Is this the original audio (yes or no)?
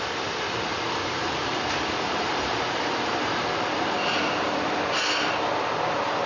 yes